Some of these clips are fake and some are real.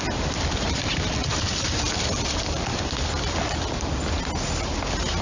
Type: real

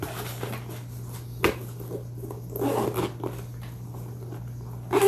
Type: real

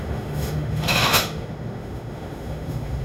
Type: fake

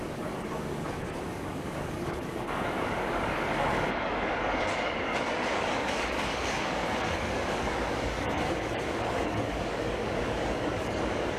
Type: fake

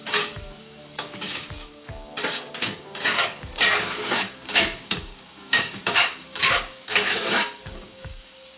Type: fake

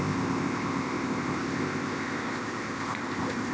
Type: fake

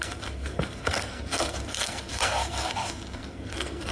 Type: fake